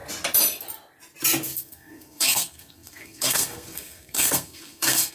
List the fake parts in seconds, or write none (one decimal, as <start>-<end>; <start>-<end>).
1.4-5.1